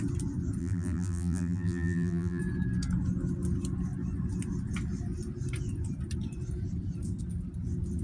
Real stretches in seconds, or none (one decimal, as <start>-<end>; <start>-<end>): 0.0-0.6; 2.4-8.0